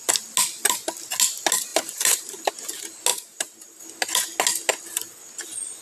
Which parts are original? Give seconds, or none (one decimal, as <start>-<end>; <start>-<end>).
0.0-1.7; 2.5-3.1; 3.8-5.8